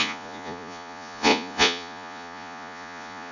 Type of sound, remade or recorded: remade